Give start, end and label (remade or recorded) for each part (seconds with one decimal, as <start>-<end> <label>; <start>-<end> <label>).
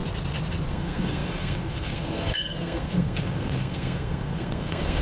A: 0.0-0.7 recorded; 0.7-5.0 remade